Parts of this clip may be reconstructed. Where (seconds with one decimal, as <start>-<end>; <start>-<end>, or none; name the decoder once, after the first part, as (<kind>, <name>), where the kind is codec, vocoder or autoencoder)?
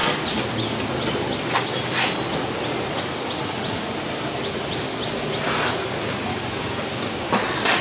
6.3-7.3 (codec, DAC)